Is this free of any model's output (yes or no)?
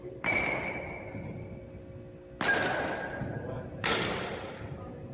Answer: yes